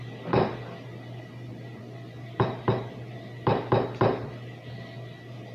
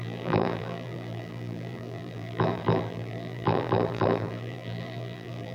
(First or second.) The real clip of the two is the first